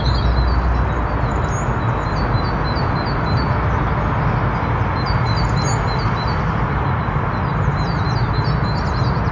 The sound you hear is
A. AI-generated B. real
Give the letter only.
B